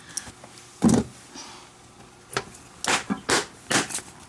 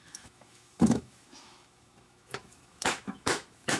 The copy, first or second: second